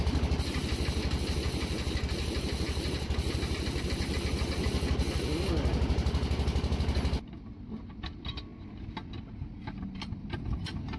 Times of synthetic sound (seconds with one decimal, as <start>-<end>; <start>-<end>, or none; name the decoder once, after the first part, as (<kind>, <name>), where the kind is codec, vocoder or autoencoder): none